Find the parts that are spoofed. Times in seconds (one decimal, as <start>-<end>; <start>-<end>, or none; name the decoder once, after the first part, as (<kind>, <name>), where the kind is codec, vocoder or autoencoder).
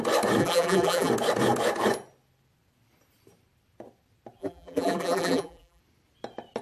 0.4-1.1 (vocoder, BigVGAN v2); 4.4-5.8